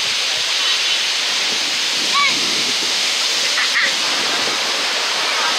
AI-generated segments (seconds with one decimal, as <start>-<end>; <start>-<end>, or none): 2.2-3.2